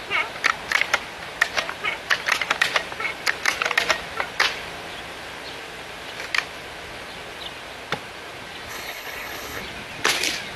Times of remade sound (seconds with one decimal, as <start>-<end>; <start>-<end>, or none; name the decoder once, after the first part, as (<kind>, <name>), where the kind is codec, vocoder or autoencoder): 8.7-9.6 (codec, HILCodec)